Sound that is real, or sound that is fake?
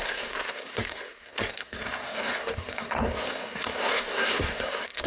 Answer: fake